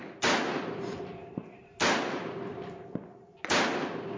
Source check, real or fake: real